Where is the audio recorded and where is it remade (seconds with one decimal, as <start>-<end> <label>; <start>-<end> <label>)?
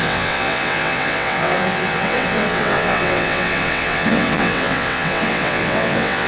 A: 0.0-6.3 remade